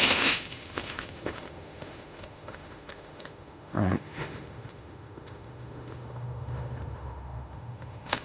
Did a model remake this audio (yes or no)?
yes